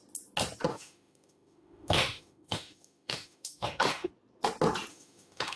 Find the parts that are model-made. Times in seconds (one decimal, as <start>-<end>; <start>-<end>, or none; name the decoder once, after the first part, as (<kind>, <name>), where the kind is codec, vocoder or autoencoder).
0.7-4.1 (autoencoder, DAC-VAE); 4.9-5.6